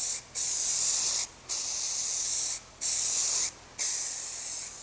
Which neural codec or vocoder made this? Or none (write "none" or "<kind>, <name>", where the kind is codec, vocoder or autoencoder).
none